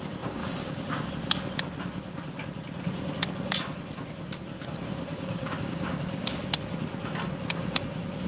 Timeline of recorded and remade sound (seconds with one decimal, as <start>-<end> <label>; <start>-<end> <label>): 0.0-0.4 recorded; 0.4-1.1 remade; 1.1-5.1 recorded; 5.1-6.4 remade; 6.4-8.3 recorded